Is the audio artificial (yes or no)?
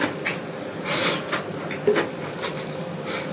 no